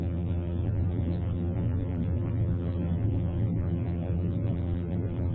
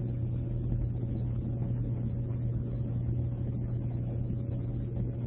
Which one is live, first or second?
second